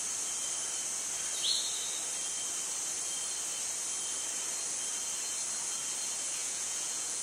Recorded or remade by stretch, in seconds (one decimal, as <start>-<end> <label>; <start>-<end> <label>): 0.0-6.4 recorded; 6.4-7.2 remade